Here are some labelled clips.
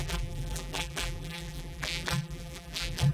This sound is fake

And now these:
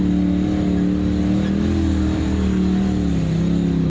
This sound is real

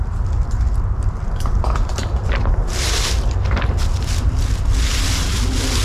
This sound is real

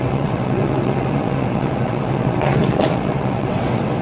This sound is fake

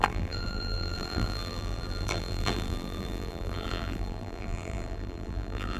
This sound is fake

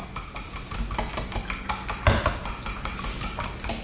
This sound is real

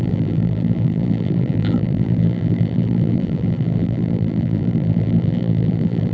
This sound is fake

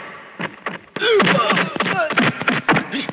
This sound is real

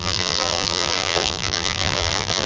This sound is fake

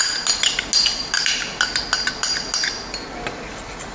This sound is real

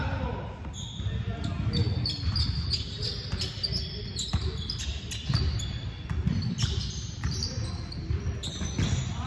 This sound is real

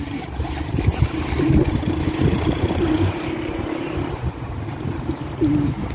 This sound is fake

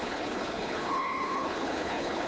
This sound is fake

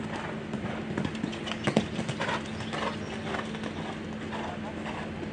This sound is real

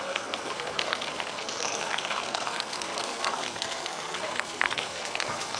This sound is fake